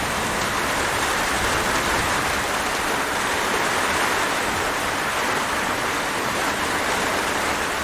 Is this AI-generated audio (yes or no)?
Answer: yes